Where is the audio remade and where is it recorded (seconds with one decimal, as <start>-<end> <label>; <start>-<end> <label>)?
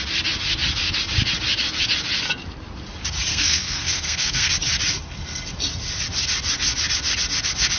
0.0-3.3 recorded; 3.3-4.5 remade; 4.5-7.8 recorded